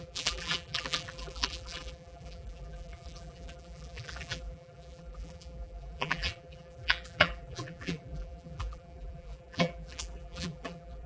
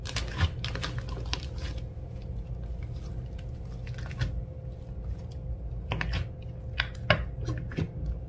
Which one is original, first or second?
second